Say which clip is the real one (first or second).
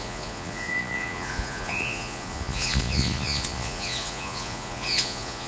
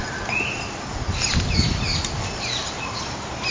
second